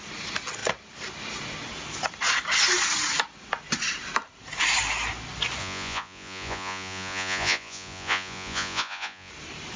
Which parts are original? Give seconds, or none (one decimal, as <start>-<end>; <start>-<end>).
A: 0.0-5.6; 9.3-9.8